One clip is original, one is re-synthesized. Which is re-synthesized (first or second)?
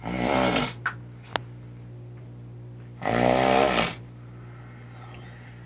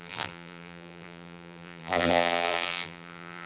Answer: second